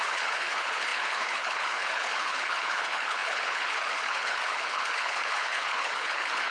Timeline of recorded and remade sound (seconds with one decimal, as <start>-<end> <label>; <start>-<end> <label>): 0.0-6.5 remade